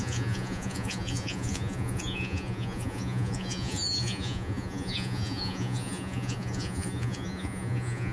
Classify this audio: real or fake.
fake